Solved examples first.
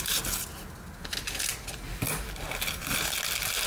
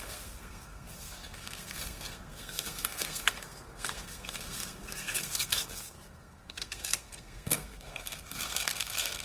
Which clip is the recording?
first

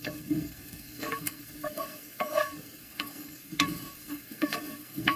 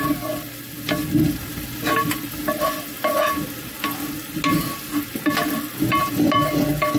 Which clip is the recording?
second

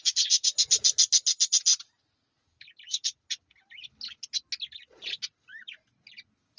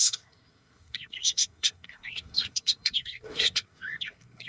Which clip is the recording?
first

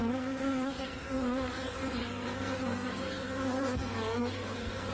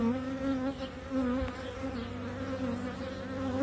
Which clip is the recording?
second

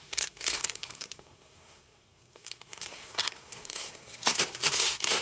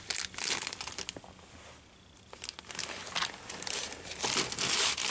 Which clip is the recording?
second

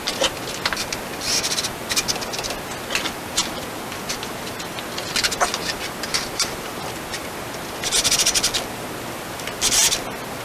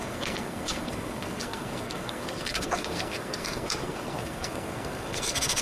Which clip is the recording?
first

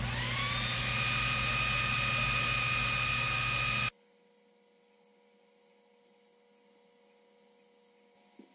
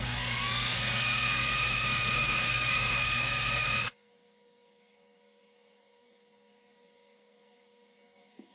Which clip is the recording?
first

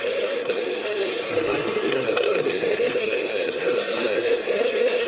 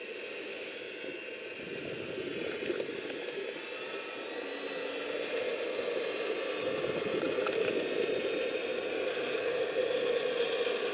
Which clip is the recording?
second